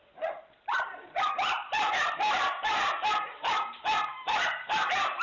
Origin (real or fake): fake